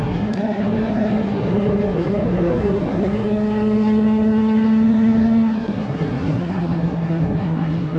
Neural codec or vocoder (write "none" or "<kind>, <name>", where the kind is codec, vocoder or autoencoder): codec, SNAC